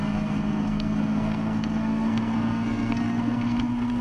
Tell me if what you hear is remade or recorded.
remade